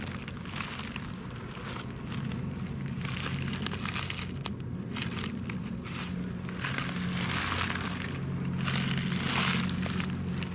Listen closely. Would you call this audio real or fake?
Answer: real